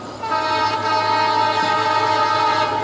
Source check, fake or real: real